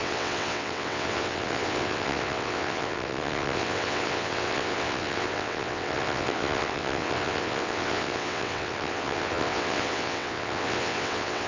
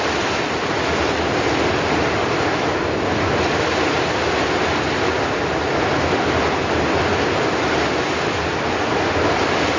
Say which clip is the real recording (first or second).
second